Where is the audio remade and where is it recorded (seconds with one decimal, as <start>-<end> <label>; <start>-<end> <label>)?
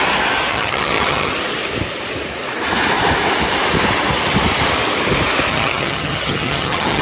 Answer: 0.0-0.5 recorded; 0.5-1.3 remade; 1.3-5.5 recorded; 5.5-7.0 remade